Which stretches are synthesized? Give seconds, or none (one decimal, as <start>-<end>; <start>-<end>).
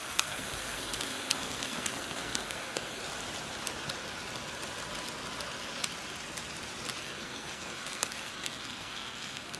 0.0-3.0; 7.0-9.6